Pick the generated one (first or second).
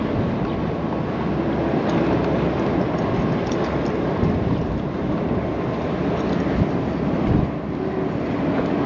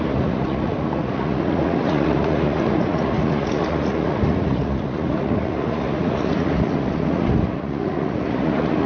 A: second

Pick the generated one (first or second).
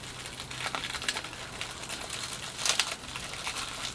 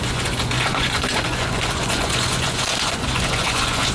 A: second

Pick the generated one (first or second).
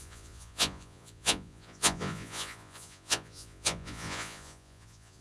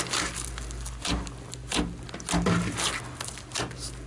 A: first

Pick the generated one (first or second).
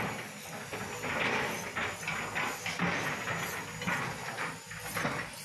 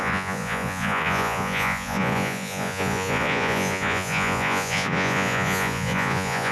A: second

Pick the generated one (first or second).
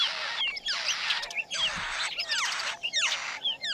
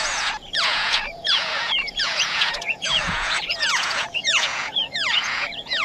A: second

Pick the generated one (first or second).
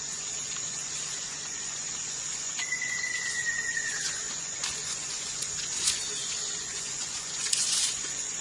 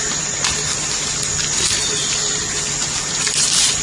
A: first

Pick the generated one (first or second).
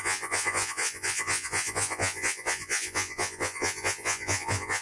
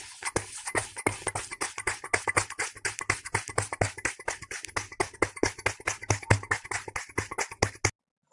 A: first